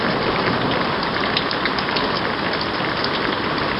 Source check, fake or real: real